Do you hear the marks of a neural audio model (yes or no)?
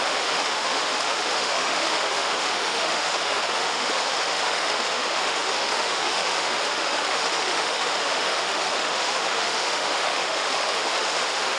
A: yes